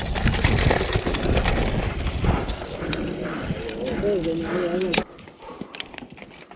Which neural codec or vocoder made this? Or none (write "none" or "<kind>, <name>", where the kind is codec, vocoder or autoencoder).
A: none